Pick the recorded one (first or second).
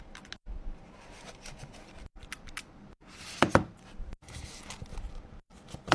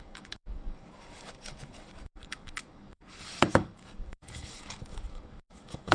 first